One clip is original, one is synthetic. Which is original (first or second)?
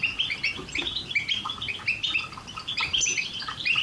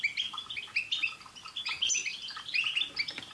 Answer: second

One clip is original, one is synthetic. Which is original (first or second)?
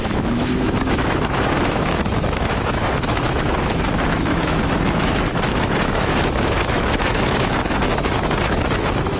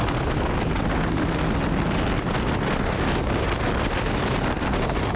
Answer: second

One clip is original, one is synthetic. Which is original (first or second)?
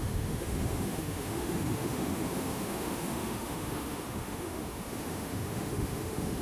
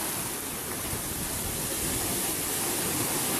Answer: second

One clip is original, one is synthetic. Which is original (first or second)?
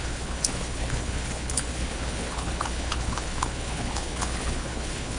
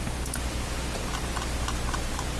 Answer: second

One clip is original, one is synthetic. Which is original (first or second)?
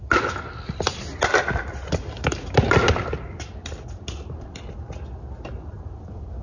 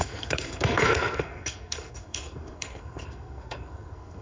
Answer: first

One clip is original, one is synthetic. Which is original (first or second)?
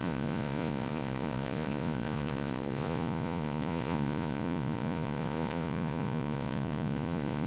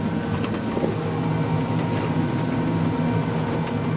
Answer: second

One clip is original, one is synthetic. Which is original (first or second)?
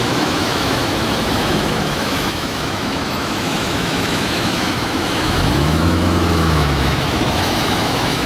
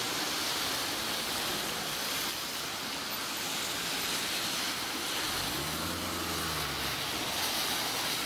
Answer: second